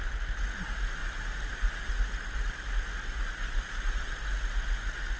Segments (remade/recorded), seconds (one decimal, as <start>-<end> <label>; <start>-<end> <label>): 0.0-1.0 recorded; 1.0-1.9 remade; 1.9-3.4 recorded; 3.4-4.1 remade; 4.1-5.2 recorded

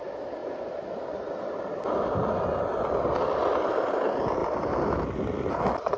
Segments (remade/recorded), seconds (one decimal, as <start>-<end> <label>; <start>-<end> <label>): 0.0-6.0 recorded

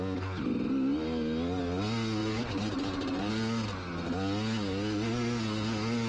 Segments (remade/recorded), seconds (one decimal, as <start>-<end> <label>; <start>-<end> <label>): 0.0-2.2 recorded; 2.2-3.3 remade; 3.3-6.1 recorded

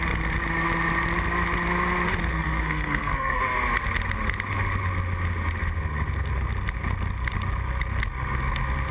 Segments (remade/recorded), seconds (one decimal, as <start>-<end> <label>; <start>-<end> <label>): 0.0-2.3 recorded; 2.3-3.4 remade; 3.4-8.9 recorded

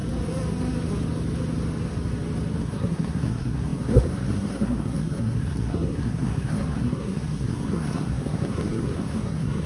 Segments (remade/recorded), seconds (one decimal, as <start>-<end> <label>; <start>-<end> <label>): 0.0-2.6 recorded; 2.6-9.7 remade

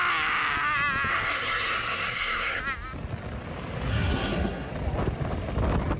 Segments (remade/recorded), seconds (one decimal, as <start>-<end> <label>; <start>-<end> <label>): 0.0-1.1 recorded; 1.1-2.6 remade; 2.6-3.9 recorded; 3.9-4.7 remade; 4.7-6.0 recorded